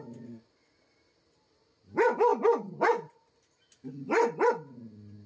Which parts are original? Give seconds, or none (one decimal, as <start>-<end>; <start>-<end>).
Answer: 0.0-5.3